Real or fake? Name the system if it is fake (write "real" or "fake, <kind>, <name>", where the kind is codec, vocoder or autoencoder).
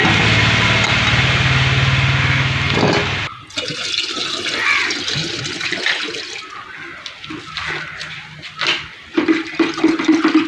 real